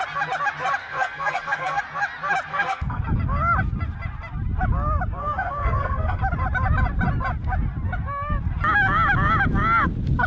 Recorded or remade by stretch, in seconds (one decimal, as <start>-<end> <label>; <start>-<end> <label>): 0.0-0.8 recorded; 0.8-1.8 remade; 1.8-2.5 recorded; 2.5-3.0 remade; 3.0-5.2 recorded; 5.2-6.2 remade; 6.2-10.3 recorded